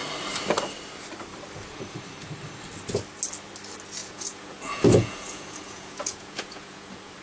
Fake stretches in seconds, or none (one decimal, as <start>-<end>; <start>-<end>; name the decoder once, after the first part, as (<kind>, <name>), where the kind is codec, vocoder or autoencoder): 4.0-7.2 (vocoder, Vocos)